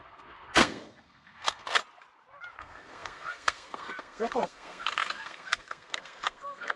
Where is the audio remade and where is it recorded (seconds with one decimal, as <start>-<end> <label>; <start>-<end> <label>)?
0.0-1.8 remade; 1.8-2.6 recorded; 2.6-6.8 remade